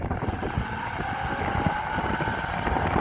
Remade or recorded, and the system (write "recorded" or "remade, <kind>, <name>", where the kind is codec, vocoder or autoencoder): remade, vocoder, BigVGAN v2